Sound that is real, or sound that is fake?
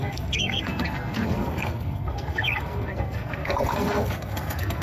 fake